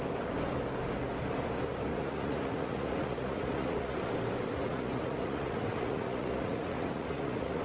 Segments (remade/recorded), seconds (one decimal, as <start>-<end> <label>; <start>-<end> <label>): 0.0-1.9 recorded; 1.9-4.1 remade; 4.1-4.7 recorded; 4.7-7.6 remade